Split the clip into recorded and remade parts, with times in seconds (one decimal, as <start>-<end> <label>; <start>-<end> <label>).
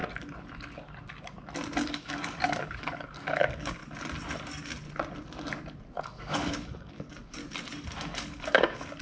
0.0-1.9 recorded; 1.9-3.8 remade; 3.8-6.0 recorded; 6.0-7.4 remade; 7.4-8.0 recorded; 8.0-9.0 remade